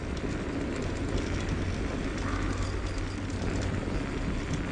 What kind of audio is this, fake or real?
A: real